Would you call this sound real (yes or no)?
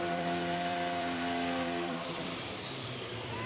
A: no